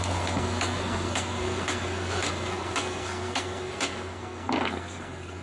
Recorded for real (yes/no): no